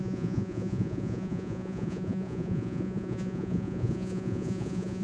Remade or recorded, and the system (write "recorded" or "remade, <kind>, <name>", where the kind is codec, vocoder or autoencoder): remade, vocoder, Vocos